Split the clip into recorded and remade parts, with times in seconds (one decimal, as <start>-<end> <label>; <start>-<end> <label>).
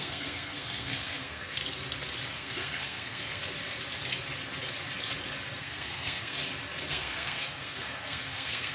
0.0-1.6 remade; 1.6-2.3 recorded; 2.3-3.4 remade; 3.4-5.6 recorded; 5.6-6.4 remade; 6.4-6.9 recorded; 6.9-8.7 remade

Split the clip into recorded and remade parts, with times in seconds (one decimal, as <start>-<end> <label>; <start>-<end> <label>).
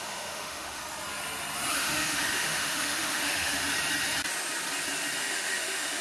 0.0-0.8 remade; 0.8-1.7 recorded; 1.7-3.6 remade; 3.6-5.2 recorded; 5.2-6.0 remade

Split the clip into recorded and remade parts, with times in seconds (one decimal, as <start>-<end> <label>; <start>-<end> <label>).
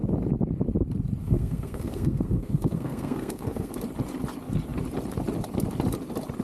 0.0-1.2 recorded; 1.2-3.7 remade; 3.7-6.4 recorded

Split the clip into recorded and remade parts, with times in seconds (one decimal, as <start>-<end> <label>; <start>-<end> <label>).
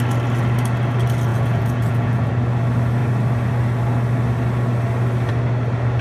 0.0-1.3 recorded; 1.3-2.3 remade; 2.3-6.0 recorded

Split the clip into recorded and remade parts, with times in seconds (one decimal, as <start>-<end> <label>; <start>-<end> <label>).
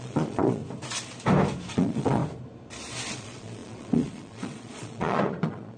0.0-0.6 remade; 0.6-1.7 recorded; 1.7-2.2 remade; 2.2-3.1 recorded; 3.1-5.8 remade